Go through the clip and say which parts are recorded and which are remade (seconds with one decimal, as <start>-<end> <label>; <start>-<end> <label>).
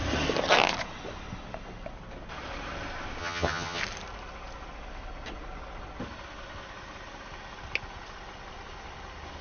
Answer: 0.0-3.2 recorded; 3.2-3.8 remade; 3.8-9.4 recorded